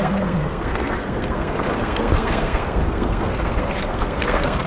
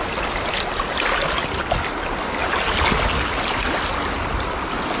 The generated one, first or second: first